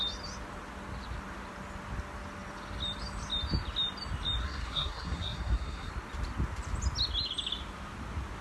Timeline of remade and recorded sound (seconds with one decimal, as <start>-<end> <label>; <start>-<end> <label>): 0.0-4.4 recorded; 4.4-5.9 remade; 5.9-8.4 recorded